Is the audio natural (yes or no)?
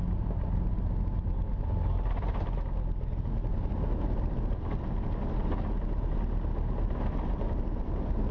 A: yes